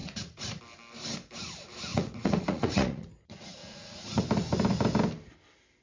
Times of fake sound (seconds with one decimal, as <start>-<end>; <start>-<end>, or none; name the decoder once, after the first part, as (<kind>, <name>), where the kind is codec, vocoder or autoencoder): 0.0-0.6 (vocoder, Vocos); 1.9-4.2